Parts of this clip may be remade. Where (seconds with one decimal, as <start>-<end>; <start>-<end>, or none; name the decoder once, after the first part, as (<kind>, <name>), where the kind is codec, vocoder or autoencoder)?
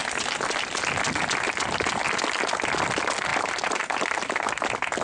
3.3-4.2 (vocoder, BigVGAN v2)